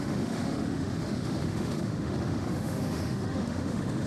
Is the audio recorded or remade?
remade